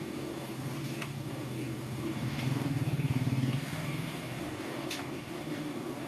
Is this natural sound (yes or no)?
no